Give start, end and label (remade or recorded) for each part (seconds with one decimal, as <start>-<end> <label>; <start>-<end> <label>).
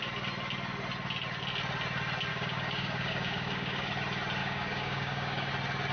0.0-2.3 recorded; 2.3-3.9 remade; 3.9-4.4 recorded; 4.4-5.5 remade; 5.5-5.9 recorded